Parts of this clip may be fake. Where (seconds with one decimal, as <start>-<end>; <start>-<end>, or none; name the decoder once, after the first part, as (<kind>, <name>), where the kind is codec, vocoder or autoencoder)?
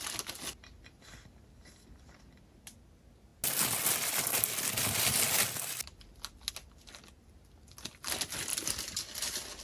none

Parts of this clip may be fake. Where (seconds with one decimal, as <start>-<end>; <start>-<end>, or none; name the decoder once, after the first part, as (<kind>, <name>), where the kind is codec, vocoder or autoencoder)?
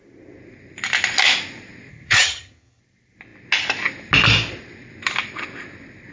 1.9-2.8 (vocoder, HiFi-GAN)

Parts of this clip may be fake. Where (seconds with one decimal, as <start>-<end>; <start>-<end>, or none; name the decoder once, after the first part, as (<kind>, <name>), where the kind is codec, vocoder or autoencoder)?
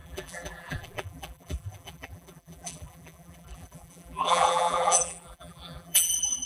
0.0-6.5 (vocoder, BigVGAN v2)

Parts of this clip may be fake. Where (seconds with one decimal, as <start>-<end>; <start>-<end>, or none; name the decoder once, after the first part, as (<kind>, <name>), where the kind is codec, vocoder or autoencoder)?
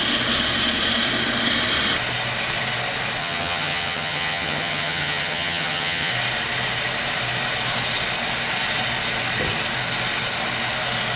3.2-6.1 (vocoder, HiFi-GAN)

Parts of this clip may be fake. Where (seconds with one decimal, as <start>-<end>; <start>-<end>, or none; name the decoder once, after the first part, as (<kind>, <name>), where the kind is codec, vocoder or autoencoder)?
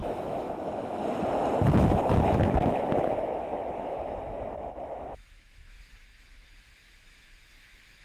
0.0-1.0 (autoencoder, DAC-VAE); 1.7-8.0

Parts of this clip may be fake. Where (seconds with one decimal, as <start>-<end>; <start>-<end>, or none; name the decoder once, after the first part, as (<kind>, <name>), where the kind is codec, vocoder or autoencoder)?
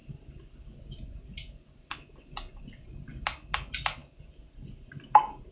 none